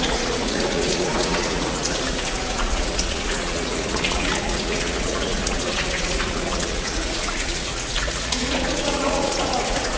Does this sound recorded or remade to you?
remade